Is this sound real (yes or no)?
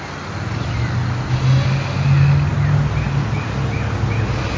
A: yes